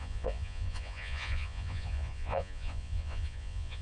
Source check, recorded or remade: remade